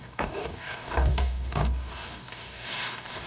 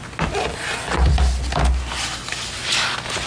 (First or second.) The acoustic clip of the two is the second